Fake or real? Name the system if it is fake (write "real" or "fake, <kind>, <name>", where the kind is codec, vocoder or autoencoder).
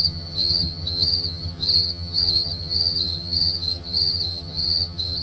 fake, vocoder, HiFi-GAN